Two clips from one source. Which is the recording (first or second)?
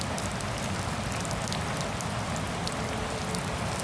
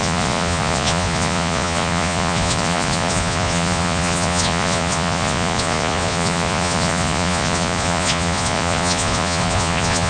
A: first